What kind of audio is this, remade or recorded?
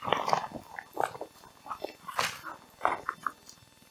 recorded